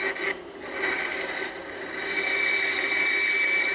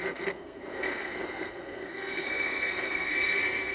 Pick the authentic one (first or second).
first